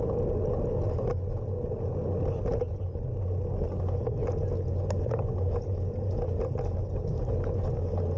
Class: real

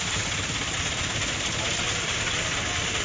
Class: real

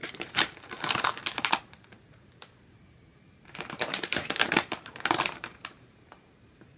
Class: fake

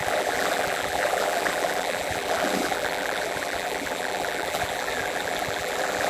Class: fake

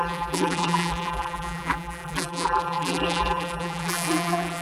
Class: fake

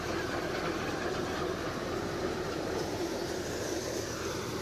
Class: fake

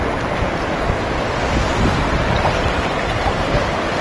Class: real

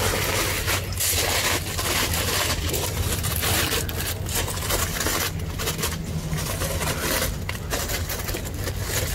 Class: real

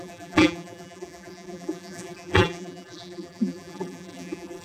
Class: fake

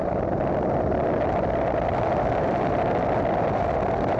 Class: real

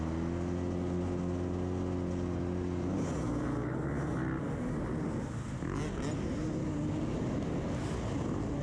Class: real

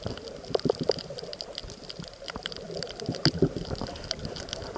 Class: fake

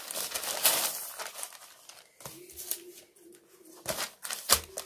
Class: real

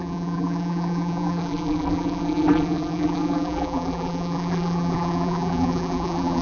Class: fake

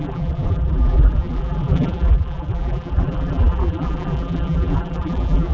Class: fake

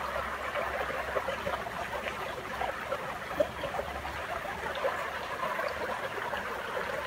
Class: real